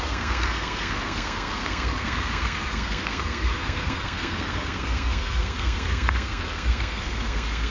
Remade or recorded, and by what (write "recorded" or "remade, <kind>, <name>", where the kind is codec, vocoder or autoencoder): remade, codec, SNAC